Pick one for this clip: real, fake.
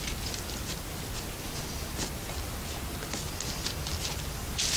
real